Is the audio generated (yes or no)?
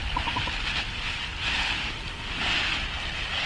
no